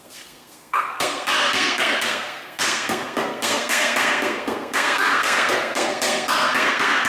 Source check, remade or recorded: remade